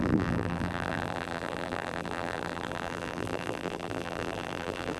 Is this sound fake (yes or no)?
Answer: yes